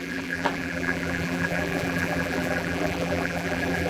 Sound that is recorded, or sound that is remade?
remade